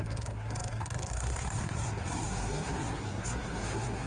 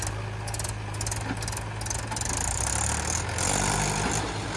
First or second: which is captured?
second